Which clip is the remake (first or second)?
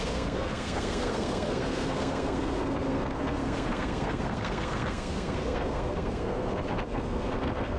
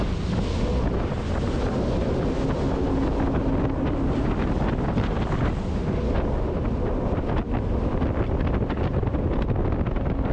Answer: first